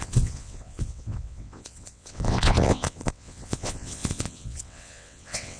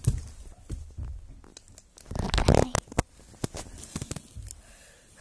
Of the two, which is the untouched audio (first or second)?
second